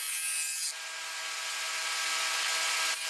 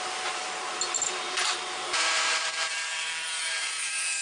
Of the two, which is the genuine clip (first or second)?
first